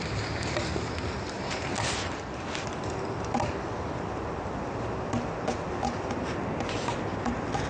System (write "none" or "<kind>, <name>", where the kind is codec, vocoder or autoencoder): none